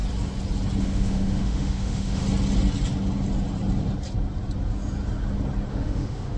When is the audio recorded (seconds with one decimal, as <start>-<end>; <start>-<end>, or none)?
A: 0.0-0.8; 2.2-5.7

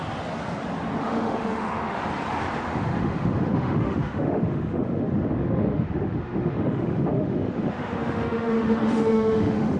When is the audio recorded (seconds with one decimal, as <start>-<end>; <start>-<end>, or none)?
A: 0.0-1.0; 2.0-2.6

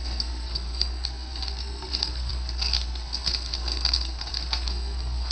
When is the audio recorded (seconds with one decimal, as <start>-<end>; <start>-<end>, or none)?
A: none

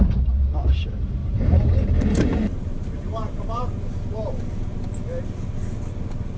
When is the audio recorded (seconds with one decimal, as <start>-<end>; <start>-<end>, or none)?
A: 0.0-1.2; 4.8-6.4

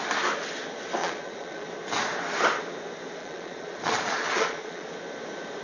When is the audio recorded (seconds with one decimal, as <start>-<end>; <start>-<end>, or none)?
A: 0.0-1.0; 1.7-3.2; 4.9-5.6